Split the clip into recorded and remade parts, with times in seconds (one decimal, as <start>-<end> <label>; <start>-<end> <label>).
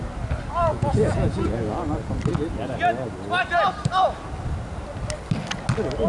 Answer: 0.0-0.7 recorded; 0.7-1.7 remade; 1.7-6.1 recorded